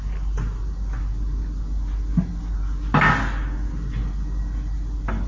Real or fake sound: real